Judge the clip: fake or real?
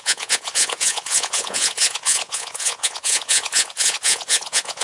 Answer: fake